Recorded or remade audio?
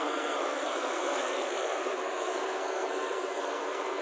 remade